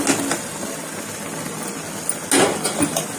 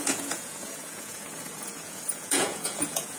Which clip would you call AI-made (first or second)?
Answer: second